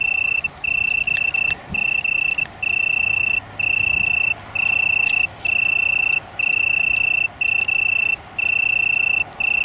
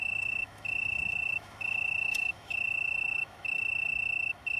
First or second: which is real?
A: first